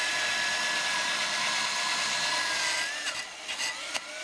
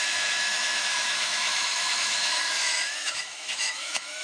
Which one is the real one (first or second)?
first